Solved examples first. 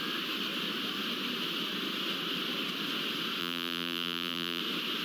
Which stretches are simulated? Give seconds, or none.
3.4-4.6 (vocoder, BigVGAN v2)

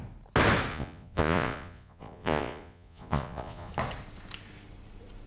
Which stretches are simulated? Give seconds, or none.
0.7-3.7 (vocoder, Vocos)

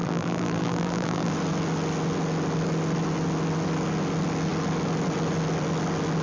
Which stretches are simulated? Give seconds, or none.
0.0-1.3 (vocoder, BigVGAN v2)

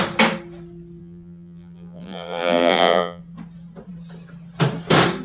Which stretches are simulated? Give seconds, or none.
1.0-3.2 (vocoder, BigVGAN v2)